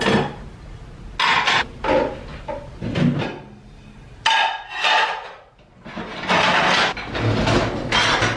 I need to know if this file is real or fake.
real